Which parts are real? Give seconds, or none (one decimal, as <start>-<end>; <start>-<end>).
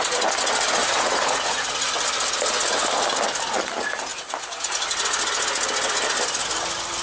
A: 0.0-0.8; 1.7-7.0